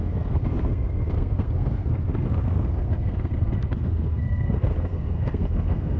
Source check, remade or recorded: remade